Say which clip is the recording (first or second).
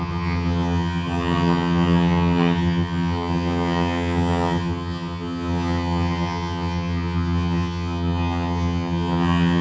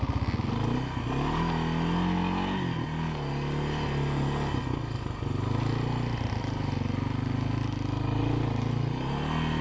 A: second